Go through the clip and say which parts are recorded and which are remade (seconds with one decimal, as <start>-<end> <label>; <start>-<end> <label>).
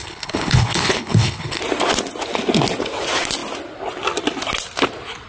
0.0-1.6 remade; 1.6-5.3 recorded